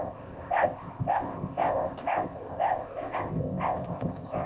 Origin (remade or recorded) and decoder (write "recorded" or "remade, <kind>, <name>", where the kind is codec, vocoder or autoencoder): remade, codec, ZipCodec